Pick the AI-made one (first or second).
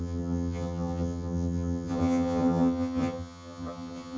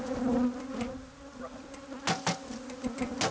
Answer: first